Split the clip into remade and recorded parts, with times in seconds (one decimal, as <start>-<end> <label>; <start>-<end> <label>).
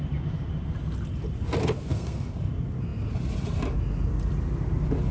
0.0-1.6 recorded; 1.6-2.4 remade; 2.4-5.1 recorded